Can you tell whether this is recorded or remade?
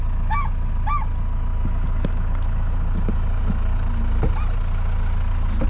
recorded